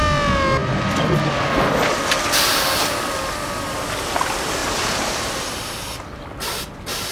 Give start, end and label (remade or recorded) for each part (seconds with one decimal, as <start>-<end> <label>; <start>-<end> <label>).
0.0-4.6 recorded; 4.6-5.3 remade; 5.3-7.1 recorded